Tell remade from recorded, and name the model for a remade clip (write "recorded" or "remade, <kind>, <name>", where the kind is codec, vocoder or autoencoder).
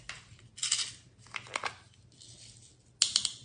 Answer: recorded